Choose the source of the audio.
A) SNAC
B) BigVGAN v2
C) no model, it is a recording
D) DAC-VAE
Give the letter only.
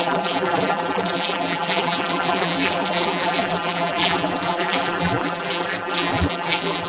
B